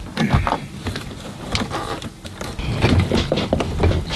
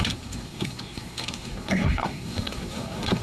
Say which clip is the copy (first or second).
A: second